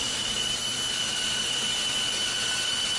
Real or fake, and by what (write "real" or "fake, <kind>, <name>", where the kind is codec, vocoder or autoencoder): real